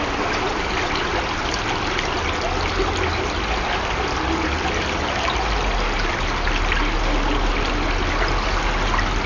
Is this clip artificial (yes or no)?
no